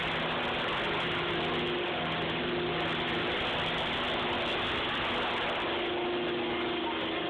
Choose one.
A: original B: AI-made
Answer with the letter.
A